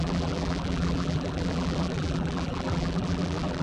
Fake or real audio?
fake